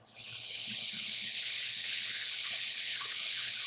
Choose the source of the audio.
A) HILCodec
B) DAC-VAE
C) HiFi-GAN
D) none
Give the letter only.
A